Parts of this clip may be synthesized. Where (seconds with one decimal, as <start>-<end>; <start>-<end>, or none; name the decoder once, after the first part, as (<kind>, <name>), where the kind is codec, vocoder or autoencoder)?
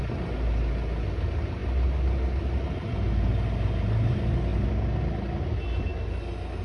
none